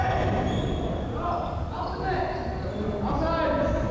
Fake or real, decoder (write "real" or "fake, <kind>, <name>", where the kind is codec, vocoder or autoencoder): real